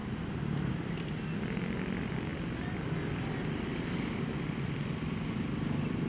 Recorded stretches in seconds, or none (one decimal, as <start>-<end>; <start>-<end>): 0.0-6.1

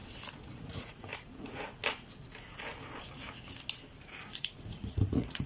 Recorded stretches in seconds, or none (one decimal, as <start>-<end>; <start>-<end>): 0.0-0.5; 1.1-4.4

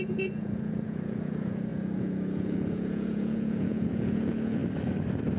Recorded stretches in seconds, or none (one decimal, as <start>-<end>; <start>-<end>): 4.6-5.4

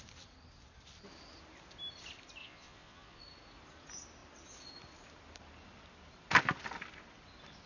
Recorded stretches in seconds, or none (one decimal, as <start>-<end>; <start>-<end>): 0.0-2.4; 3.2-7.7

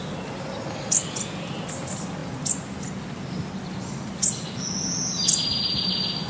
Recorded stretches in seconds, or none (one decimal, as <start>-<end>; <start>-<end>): 0.0-6.3

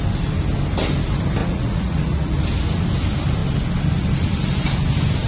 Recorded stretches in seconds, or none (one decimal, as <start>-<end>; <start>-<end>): 0.0-1.4; 2.3-5.3